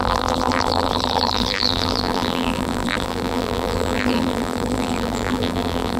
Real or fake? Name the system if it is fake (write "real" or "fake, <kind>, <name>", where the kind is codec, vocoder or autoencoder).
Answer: fake, vocoder, BigVGAN v2